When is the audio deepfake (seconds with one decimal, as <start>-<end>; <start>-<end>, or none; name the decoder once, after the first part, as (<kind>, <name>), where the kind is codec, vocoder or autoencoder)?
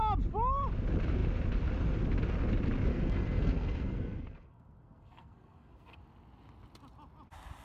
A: 2.9-6.0 (codec, SNAC)